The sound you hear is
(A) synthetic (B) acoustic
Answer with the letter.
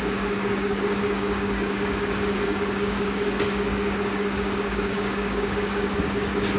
A